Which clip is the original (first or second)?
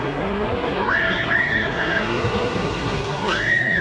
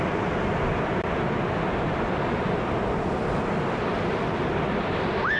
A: second